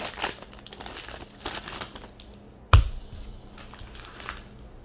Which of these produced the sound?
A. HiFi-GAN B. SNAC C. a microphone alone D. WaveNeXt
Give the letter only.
C